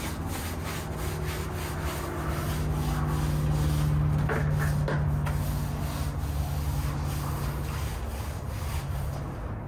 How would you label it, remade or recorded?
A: recorded